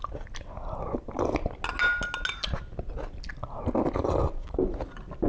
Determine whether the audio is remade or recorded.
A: recorded